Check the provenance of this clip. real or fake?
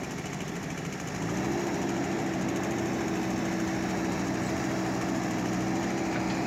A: real